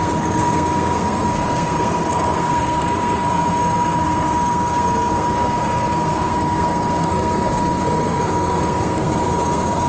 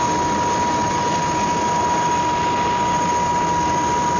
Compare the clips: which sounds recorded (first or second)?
second